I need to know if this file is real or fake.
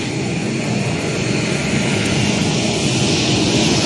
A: fake